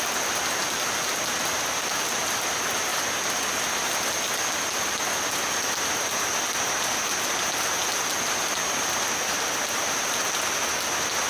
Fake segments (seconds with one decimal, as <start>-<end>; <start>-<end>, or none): none